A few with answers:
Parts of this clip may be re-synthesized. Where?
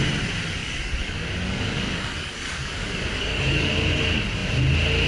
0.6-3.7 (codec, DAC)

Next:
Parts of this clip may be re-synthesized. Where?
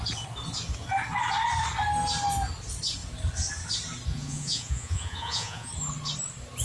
4.1-5.7 (vocoder, Vocos)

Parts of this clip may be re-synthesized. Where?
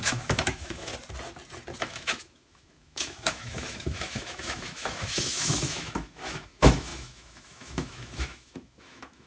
0.0-0.9 (autoencoder, DAC-VAE); 1.8-9.3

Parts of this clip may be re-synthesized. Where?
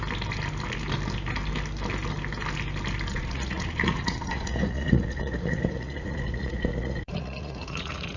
3.1-8.2 (vocoder, Vocos)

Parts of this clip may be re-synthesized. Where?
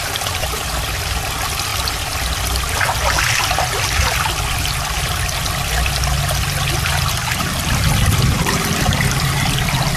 none